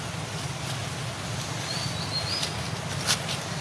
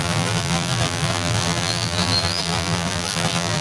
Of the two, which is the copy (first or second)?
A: second